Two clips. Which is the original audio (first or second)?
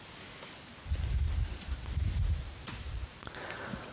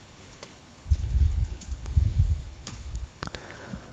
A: first